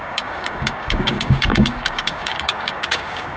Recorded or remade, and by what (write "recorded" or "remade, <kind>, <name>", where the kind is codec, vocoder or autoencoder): remade, codec, DAC